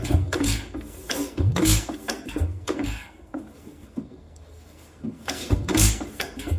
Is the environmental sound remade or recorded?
remade